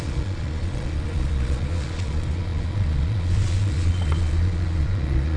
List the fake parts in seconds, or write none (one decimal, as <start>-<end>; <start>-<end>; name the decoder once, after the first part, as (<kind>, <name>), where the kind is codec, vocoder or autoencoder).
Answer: 0.0-5.4 (vocoder, Vocos)